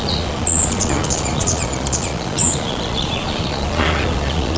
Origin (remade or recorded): remade